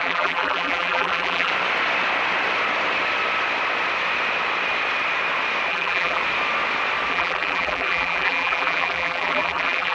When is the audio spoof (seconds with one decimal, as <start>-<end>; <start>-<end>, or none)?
0.0-1.5; 5.7-6.2; 7.1-9.9